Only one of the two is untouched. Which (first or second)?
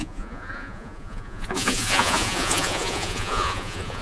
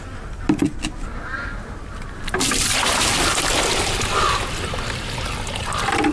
second